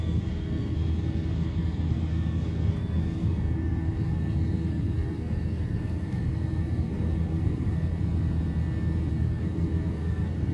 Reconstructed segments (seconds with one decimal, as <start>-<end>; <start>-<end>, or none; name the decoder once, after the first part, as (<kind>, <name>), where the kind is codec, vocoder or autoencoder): 0.0-7.9 (codec, SNAC); 9.1-10.5